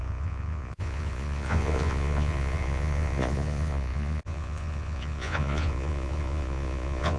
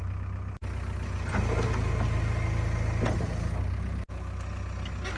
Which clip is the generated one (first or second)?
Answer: first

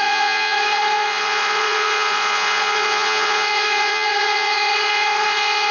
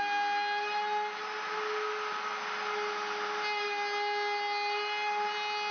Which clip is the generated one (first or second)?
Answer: first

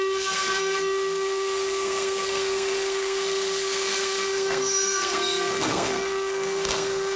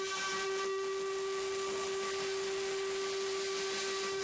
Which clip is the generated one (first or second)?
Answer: first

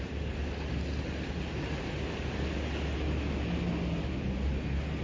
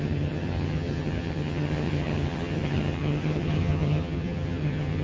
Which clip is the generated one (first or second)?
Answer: second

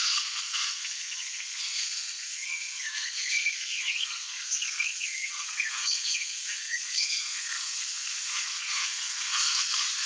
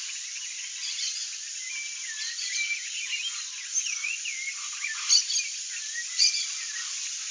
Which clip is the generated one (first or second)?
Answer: first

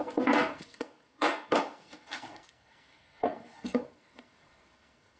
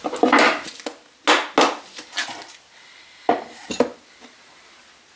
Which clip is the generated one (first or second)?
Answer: first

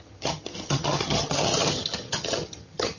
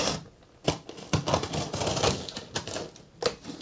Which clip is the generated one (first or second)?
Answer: first